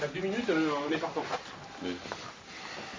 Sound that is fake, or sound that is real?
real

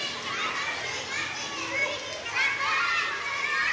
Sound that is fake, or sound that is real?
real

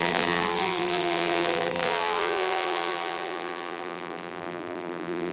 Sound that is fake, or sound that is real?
fake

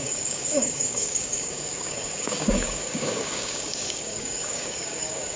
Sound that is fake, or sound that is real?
fake